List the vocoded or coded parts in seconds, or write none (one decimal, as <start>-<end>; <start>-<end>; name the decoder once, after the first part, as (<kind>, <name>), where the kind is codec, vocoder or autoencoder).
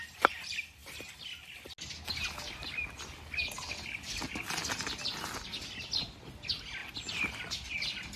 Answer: none